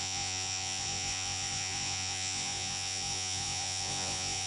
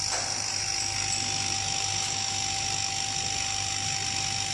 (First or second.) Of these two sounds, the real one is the second